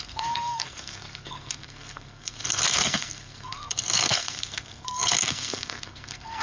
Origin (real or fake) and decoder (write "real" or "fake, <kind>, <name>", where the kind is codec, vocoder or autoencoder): fake, codec, SNAC